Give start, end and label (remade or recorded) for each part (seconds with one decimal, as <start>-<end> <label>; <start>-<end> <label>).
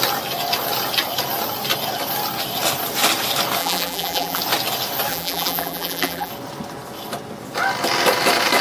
0.0-3.6 recorded; 3.6-4.4 remade; 4.4-5.1 recorded; 5.1-6.3 remade; 6.3-8.6 recorded